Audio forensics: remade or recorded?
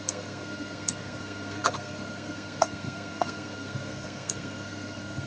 remade